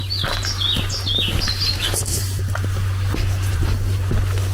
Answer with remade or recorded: recorded